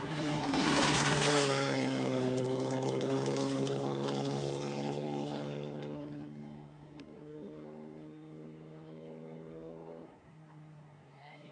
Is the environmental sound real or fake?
fake